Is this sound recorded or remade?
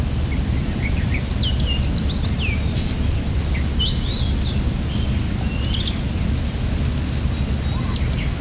recorded